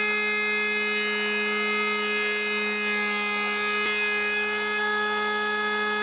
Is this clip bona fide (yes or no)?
yes